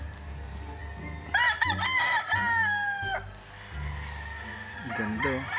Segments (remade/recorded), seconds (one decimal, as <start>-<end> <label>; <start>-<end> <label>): 0.0-5.6 recorded